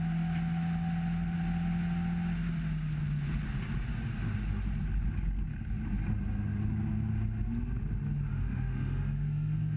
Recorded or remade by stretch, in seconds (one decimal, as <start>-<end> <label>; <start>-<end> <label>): 0.0-8.3 recorded; 8.3-9.8 remade